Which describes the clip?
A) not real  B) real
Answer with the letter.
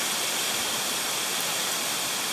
A